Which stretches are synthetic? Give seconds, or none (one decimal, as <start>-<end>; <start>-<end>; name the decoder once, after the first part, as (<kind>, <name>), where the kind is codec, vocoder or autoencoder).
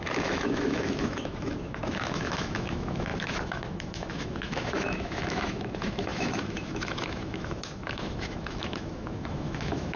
0.0-10.0 (autoencoder, DAC-VAE)